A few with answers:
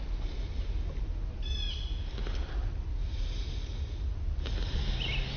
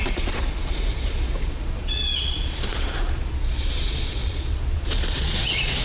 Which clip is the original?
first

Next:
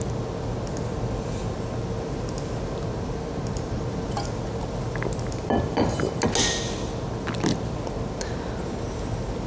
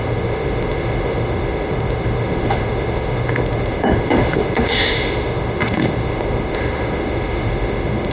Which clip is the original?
first